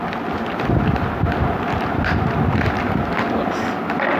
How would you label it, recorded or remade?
recorded